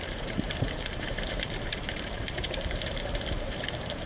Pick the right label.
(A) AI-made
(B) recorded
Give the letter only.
A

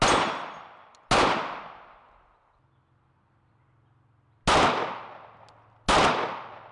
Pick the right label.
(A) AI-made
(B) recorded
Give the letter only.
B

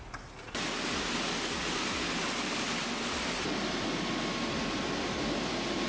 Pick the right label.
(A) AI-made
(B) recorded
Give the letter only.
B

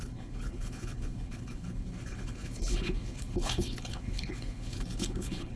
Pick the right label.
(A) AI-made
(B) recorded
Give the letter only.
A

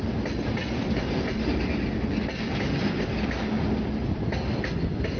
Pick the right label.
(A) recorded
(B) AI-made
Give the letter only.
A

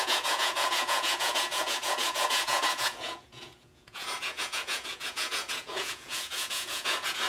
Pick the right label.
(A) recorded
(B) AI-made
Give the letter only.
B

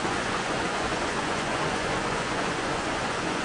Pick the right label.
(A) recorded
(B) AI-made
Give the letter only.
B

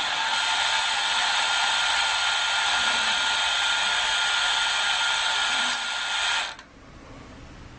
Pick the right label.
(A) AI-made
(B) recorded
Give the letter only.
B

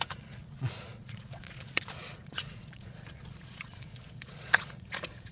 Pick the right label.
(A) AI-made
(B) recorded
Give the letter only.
A